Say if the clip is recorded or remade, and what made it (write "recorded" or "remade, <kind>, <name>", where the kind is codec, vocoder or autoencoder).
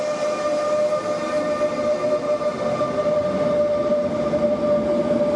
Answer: recorded